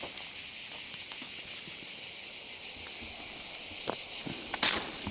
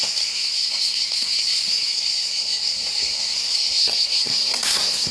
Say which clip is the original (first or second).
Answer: first